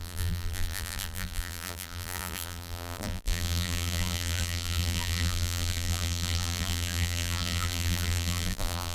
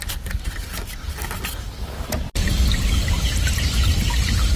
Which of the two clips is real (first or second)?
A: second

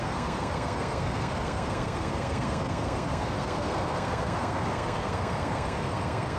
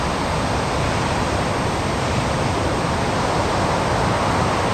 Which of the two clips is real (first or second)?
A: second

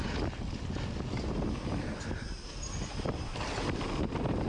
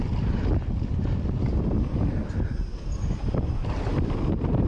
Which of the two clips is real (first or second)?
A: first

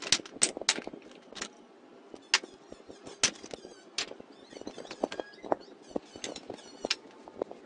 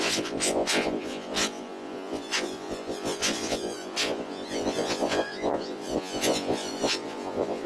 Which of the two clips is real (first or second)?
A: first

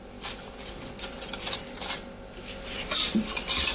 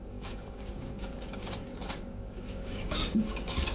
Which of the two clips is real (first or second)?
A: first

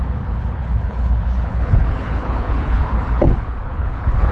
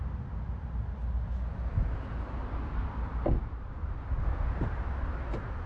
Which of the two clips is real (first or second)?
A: second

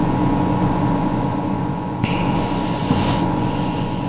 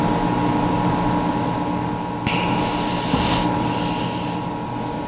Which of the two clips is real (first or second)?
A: second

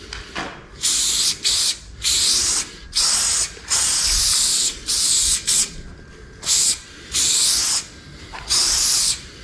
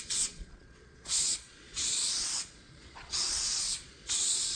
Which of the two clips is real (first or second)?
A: first